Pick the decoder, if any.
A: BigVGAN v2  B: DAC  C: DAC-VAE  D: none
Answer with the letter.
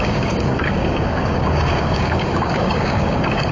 B